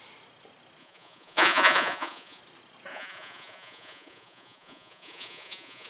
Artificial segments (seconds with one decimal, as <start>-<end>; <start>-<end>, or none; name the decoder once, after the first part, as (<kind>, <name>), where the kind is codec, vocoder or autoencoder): 0.8-2.4 (vocoder, Vocos); 2.9-5.9

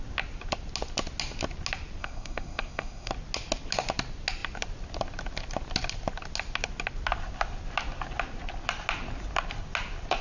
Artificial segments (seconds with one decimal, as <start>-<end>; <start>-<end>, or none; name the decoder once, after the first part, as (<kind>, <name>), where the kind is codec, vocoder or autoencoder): 2.0-3.1 (codec, SNAC)

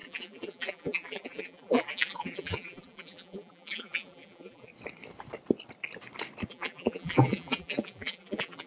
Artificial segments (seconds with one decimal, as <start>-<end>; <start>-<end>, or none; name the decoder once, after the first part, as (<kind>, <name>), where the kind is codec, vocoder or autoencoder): 0.0-4.7 (vocoder, BigVGAN v2); 6.5-8.7

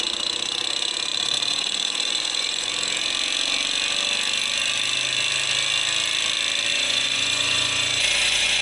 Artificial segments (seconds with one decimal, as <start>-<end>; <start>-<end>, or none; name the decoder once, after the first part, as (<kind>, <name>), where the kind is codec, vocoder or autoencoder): 1.1-2.7 (vocoder, Vocos); 6.7-8.6